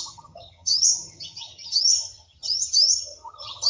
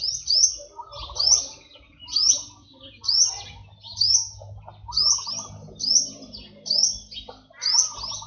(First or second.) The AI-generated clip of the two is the first